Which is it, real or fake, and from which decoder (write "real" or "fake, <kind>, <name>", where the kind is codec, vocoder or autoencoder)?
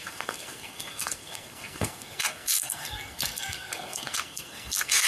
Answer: fake, codec, SNAC